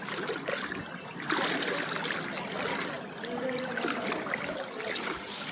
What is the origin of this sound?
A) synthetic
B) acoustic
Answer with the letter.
B